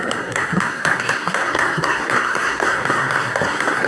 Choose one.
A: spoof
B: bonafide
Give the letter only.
A